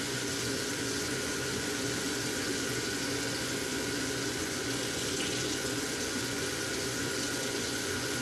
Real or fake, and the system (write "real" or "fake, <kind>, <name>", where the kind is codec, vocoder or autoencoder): fake, vocoder, Vocos